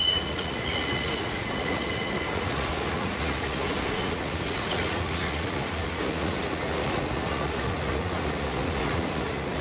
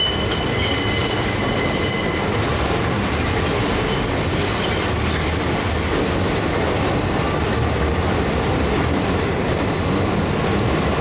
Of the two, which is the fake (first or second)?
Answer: first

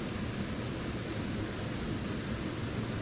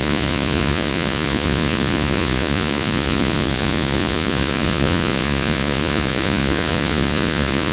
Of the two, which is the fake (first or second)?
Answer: second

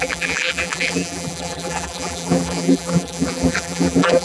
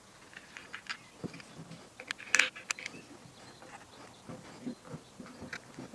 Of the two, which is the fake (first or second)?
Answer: first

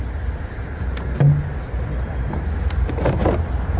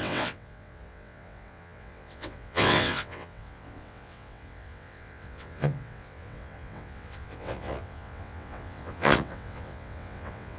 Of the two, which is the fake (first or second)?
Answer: second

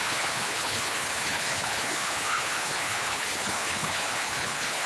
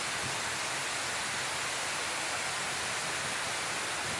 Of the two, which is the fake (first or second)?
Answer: first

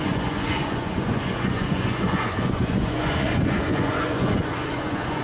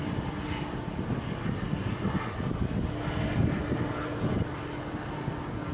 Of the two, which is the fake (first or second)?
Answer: first